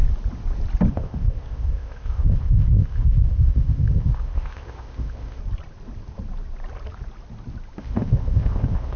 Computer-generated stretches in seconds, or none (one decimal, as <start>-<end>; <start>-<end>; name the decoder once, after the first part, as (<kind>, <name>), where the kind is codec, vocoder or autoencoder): 0.9-5.4 (codec, ZipCodec); 7.8-9.0